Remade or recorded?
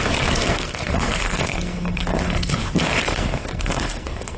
remade